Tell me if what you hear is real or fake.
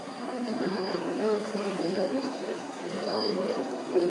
fake